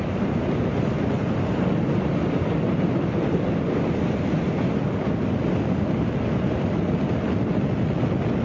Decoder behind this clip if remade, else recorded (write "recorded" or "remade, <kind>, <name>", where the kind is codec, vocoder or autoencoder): recorded